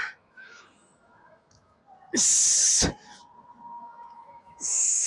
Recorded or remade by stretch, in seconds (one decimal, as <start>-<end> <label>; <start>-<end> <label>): 0.0-1.8 remade; 1.8-3.8 recorded; 3.8-5.1 remade